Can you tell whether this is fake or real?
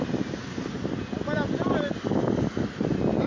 real